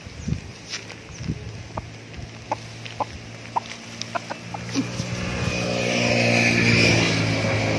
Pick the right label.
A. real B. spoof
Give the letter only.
A